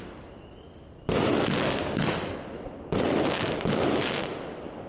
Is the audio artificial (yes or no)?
no